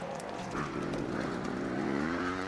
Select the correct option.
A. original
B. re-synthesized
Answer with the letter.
B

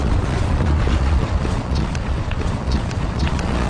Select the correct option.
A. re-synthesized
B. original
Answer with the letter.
A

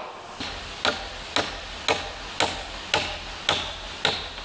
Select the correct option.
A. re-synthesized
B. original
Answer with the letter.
B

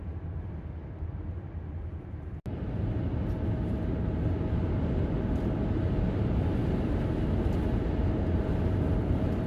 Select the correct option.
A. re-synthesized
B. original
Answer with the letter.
B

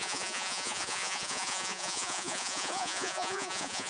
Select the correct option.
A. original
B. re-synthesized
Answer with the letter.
B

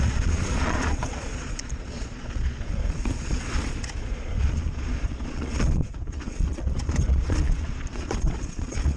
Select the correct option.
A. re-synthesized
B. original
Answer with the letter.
A